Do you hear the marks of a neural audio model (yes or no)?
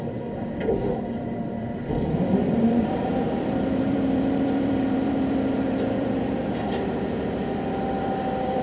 yes